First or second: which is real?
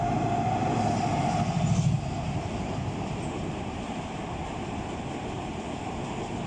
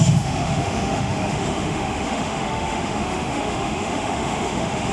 first